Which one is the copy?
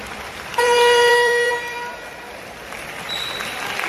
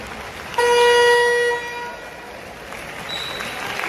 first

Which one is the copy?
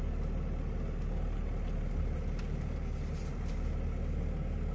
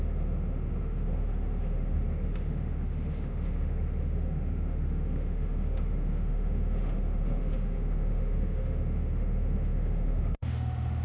second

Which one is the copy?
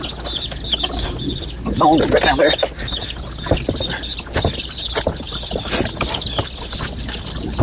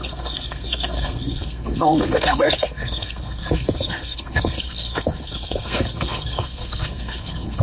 second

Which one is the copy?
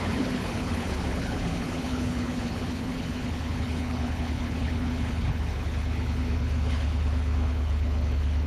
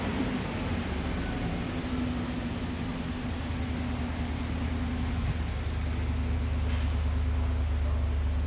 first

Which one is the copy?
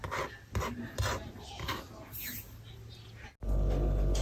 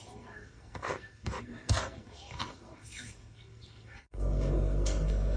second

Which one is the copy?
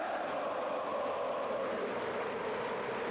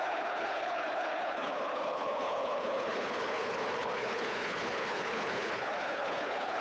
second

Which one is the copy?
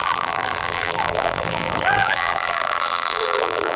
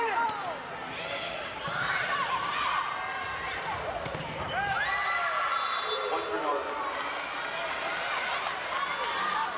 first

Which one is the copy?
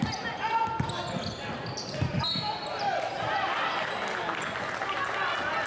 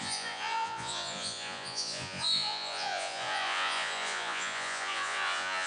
second